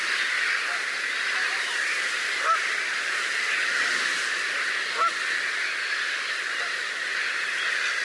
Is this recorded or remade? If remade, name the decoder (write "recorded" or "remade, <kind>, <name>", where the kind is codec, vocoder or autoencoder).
recorded